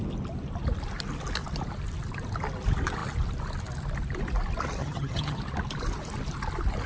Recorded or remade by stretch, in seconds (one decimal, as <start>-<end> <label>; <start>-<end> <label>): 0.0-4.8 recorded; 4.8-5.4 remade; 5.4-6.9 recorded